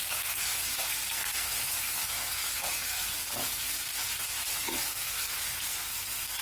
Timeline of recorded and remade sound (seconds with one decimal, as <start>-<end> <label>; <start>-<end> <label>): 0.0-6.4 remade